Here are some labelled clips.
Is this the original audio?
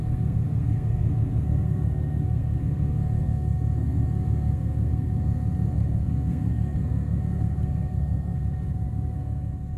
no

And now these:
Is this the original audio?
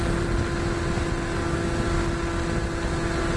yes